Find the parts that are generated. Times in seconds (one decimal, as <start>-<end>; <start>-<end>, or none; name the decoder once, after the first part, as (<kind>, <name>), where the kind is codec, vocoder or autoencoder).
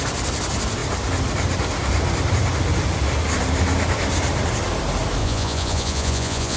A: 5.2-6.6 (vocoder, Vocos)